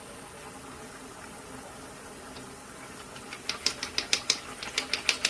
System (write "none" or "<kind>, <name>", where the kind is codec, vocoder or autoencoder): none